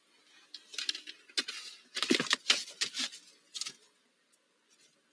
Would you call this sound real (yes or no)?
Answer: yes